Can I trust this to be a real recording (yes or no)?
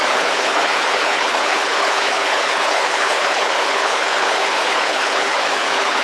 no